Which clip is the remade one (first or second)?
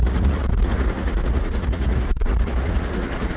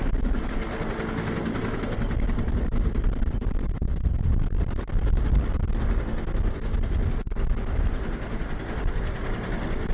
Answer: first